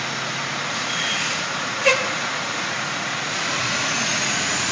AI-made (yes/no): yes